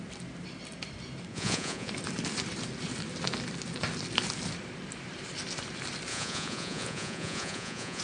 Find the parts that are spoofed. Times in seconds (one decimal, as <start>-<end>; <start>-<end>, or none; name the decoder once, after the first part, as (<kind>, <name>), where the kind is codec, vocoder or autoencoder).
1.3-1.9 (vocoder, Vocos); 6.1-8.0